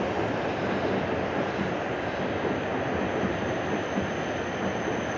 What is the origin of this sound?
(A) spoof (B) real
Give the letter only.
B